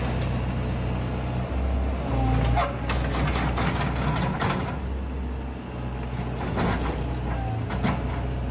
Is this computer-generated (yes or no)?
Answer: no